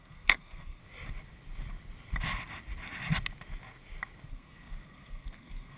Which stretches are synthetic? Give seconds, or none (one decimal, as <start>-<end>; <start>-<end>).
0.0-0.8; 4.3-5.8